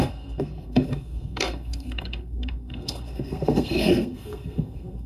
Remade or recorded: remade